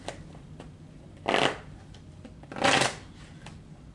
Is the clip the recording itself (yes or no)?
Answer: yes